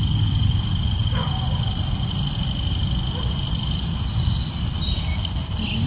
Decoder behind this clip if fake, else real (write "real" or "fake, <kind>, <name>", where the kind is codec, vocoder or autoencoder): real